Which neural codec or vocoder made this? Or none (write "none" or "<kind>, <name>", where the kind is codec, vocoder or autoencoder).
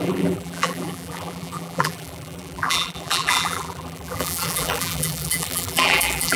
vocoder, BigVGAN v2